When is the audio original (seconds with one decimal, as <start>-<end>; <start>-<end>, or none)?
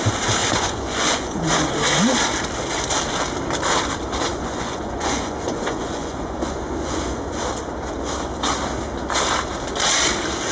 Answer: 0.0-0.4; 1.7-4.3; 7.4-10.5